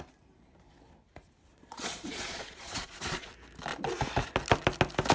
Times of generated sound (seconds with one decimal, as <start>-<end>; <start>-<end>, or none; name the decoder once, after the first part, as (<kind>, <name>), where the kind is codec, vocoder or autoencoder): 1.5-3.3 (vocoder, Vocos)